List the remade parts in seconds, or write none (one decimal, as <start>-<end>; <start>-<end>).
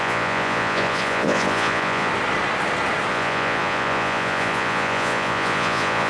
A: 0.0-2.1; 3.1-6.1